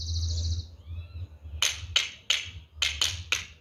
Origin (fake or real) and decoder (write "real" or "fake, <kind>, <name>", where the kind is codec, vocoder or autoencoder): real